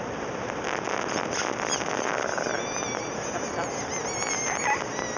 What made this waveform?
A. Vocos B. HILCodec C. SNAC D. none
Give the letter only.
D